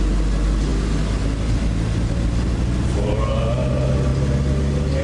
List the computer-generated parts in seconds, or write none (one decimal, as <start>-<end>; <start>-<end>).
none